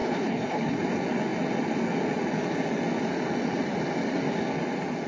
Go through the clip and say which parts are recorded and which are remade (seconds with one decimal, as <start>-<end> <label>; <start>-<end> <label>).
0.0-0.8 remade; 0.8-5.1 recorded